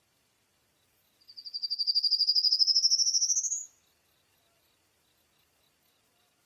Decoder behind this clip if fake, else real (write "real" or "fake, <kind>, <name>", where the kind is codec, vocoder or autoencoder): real